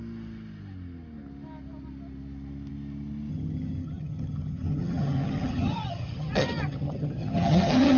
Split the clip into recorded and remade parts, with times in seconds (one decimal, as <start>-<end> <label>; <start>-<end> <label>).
0.0-3.3 recorded; 3.3-8.0 remade